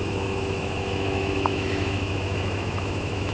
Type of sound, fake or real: fake